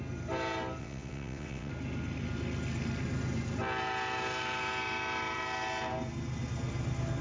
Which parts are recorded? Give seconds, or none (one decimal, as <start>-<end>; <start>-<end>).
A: 0.0-0.8; 1.7-7.2